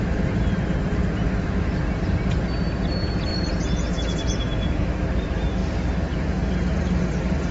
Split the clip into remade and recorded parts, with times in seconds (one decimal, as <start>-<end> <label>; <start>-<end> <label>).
0.0-3.3 recorded; 3.3-4.8 remade; 4.8-7.5 recorded

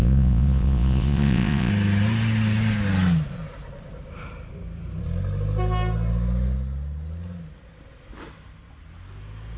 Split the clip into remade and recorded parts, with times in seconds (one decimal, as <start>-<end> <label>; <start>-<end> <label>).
0.0-1.7 remade; 1.7-9.6 recorded

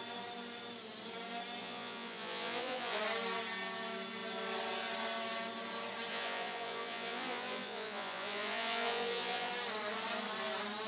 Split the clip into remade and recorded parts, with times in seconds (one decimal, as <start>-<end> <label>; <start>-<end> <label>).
0.0-1.6 recorded; 1.6-3.0 remade; 3.0-6.1 recorded; 6.1-9.5 remade; 9.5-10.9 recorded

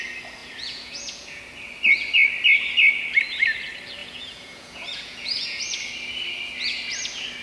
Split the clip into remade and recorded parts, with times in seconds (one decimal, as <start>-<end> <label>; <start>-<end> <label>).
0.0-0.4 recorded; 0.4-1.4 remade; 1.4-4.0 recorded; 4.0-5.6 remade; 5.6-7.4 recorded

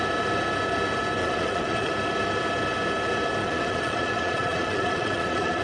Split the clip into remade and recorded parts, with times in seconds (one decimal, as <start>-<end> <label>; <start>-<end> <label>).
0.0-1.2 recorded; 1.2-1.9 remade; 1.9-3.4 recorded; 3.4-5.6 remade

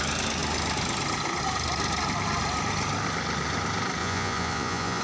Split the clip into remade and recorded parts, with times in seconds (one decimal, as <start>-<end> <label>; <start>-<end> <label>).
0.0-4.0 recorded; 4.0-5.0 remade

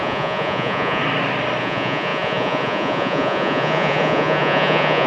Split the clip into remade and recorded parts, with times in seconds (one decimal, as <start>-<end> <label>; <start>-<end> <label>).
0.0-1.0 remade; 1.0-1.6 recorded; 1.6-5.1 remade